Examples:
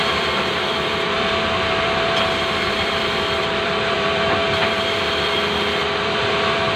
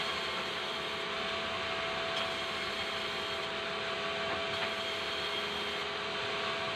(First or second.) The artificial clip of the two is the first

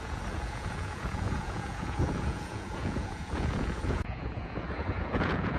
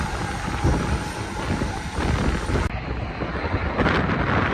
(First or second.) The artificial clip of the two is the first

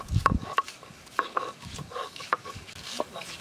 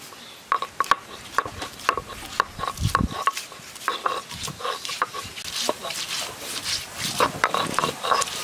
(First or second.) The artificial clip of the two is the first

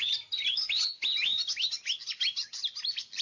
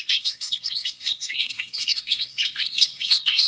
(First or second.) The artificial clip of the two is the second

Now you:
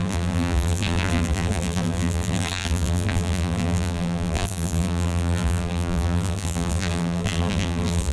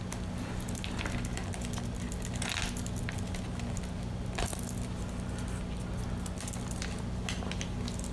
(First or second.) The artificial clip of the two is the first